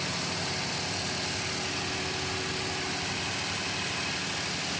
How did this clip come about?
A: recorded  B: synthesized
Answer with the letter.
A